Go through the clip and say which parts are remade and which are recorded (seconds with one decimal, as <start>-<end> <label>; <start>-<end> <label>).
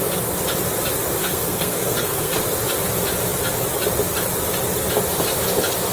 0.0-1.2 recorded; 1.2-2.3 remade; 2.3-5.9 recorded